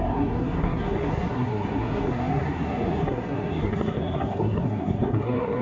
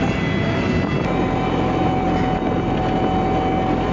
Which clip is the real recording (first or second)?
second